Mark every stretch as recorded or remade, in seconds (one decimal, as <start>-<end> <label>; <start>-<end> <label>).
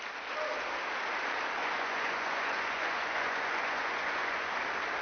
0.0-1.6 recorded; 1.6-4.6 remade; 4.6-5.0 recorded